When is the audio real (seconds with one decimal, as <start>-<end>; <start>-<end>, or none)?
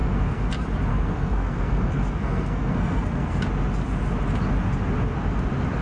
0.5-0.9; 3.4-5.8